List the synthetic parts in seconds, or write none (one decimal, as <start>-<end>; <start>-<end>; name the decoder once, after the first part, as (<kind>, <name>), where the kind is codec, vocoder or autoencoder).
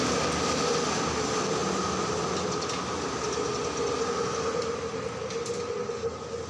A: none